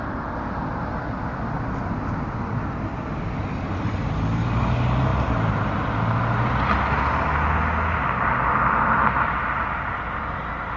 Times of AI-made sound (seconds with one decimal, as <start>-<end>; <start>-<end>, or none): none